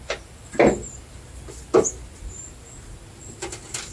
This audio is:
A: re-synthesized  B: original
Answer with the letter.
B